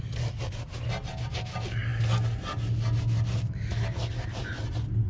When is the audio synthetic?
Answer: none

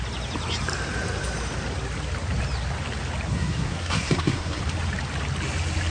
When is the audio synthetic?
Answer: 3.3-4.6 (codec, SNAC)